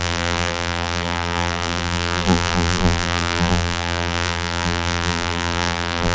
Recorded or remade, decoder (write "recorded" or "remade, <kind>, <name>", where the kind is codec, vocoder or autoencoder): remade, vocoder, BigVGAN v2